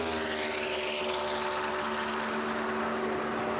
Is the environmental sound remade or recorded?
recorded